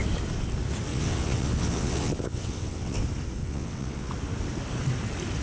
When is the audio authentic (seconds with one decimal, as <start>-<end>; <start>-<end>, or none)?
0.0-0.9; 3.0-3.4; 4.1-5.4